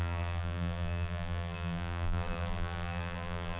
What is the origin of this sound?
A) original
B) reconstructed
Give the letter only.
B